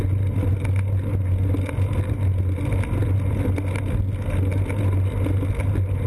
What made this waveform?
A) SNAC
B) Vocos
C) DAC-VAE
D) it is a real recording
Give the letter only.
D